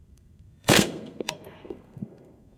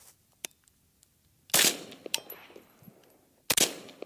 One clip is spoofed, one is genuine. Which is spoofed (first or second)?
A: first